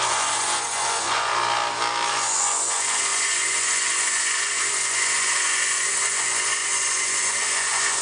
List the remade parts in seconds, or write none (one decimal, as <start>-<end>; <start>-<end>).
0.0-1.3; 2.1-8.0